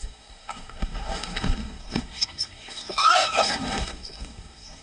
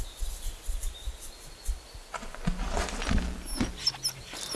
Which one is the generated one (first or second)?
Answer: first